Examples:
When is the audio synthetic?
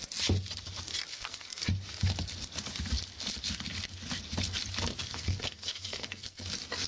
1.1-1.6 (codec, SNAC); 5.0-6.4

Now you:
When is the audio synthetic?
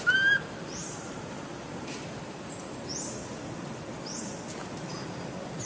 0.8-1.9 (vocoder, BigVGAN v2)